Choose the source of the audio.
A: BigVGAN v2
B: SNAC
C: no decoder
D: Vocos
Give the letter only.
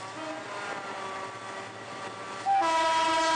C